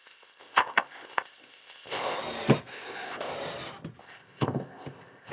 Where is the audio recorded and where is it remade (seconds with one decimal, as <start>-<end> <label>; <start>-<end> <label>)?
0.0-2.2 remade; 2.2-2.7 recorded; 2.7-3.3 remade; 3.3-4.0 recorded; 4.0-5.3 remade

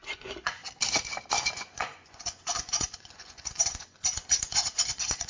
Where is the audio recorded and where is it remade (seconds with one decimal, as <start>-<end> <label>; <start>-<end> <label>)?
0.0-0.6 remade; 0.6-1.5 recorded; 1.5-5.3 remade

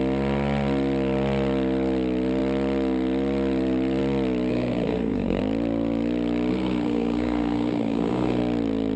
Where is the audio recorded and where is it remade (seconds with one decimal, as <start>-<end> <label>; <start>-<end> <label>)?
0.0-4.5 recorded; 4.5-5.4 remade; 5.4-6.5 recorded; 6.5-8.4 remade; 8.4-9.0 recorded

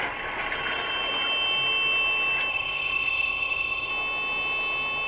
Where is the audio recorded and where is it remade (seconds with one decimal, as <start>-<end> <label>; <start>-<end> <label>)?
0.0-2.5 recorded; 2.5-3.9 remade; 3.9-5.1 recorded